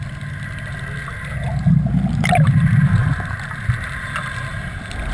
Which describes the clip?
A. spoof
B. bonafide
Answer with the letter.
B